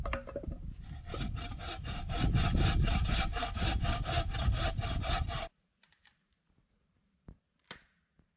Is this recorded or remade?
remade